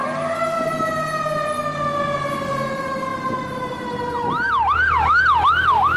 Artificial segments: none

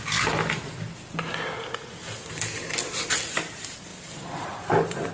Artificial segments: 0.0-5.1 (vocoder, BigVGAN v2)

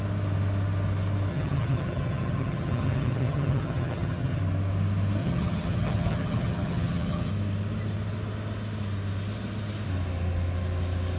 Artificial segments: 1.3-4.4 (vocoder, HiFi-GAN); 5.2-7.3

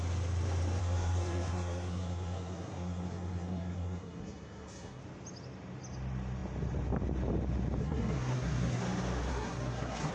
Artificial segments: 0.8-5.0 (codec, SNAC); 7.8-8.8; 9.3-10.1